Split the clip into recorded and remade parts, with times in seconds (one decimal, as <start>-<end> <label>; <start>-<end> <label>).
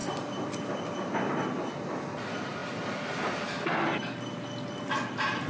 0.0-5.5 recorded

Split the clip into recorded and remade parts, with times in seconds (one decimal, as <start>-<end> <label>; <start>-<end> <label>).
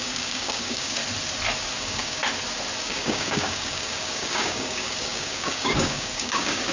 0.0-1.0 remade; 1.0-1.8 recorded; 1.8-2.2 remade; 2.2-2.8 recorded; 2.8-6.7 remade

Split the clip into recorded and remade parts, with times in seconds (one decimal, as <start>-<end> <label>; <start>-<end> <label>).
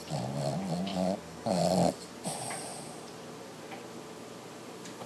0.0-0.9 recorded; 0.9-1.6 remade; 1.6-5.1 recorded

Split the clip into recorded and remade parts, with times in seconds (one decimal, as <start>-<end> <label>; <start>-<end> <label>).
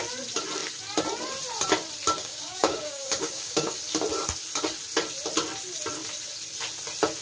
0.0-2.2 recorded; 2.2-3.8 remade; 3.8-7.2 recorded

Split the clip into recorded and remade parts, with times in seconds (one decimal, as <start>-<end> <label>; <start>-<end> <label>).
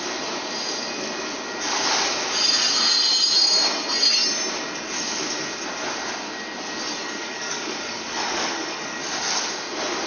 0.0-7.0 recorded; 7.0-9.0 remade; 9.0-10.1 recorded